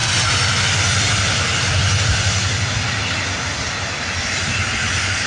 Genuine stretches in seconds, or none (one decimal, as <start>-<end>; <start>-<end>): 0.0-5.3

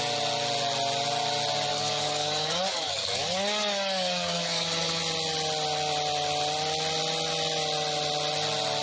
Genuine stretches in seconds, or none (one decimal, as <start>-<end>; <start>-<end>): 0.0-1.7; 5.0-8.8

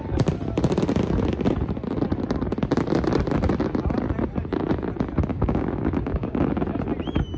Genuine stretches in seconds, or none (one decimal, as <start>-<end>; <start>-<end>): 0.0-5.3; 6.4-7.4

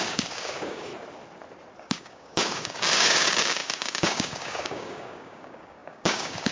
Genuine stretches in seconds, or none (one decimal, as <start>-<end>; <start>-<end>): 0.9-1.8

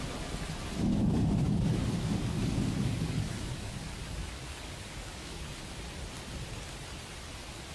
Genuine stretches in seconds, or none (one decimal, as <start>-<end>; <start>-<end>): 0.0-0.9; 5.5-7.7